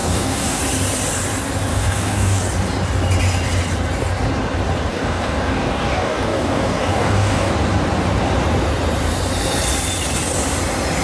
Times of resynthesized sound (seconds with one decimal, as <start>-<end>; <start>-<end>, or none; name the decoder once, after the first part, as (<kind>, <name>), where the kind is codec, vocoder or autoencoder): 0.0-0.6 (codec, DAC); 1.7-2.4; 4.9-7.5